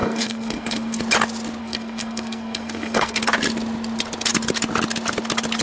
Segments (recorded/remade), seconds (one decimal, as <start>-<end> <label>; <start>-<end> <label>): 0.0-1.0 remade; 1.0-1.6 recorded; 1.6-3.2 remade; 3.2-5.6 recorded